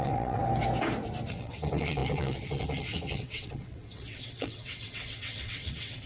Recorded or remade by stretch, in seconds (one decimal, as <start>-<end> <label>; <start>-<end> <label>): 0.0-0.4 remade; 0.4-1.3 recorded; 1.3-6.1 remade